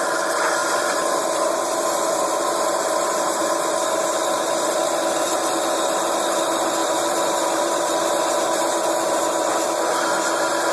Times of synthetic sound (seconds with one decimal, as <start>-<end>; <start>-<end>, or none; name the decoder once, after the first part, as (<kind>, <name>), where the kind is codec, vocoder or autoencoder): 0.6-5.6 (vocoder, BigVGAN v2); 6.8-9.5